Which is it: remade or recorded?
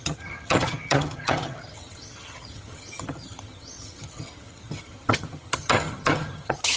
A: remade